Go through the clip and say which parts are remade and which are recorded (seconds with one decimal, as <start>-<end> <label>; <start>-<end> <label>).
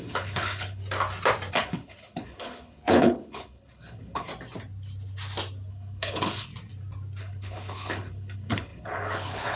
0.0-0.8 remade; 0.8-1.5 recorded; 1.5-4.3 remade; 4.3-5.7 recorded; 5.7-6.5 remade; 6.5-7.2 recorded; 7.2-9.6 remade